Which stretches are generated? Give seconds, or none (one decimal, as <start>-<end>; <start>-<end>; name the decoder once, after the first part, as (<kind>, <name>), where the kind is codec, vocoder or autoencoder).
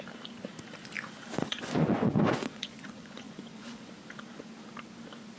1.4-3.9 (vocoder, Vocos)